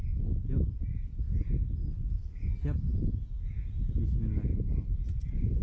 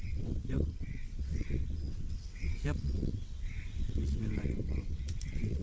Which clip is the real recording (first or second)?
first